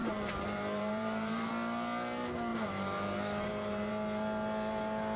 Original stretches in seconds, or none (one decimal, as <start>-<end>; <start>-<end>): 1.5-2.5; 3.9-5.2